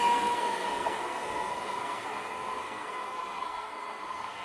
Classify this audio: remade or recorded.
remade